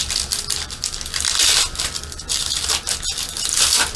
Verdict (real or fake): real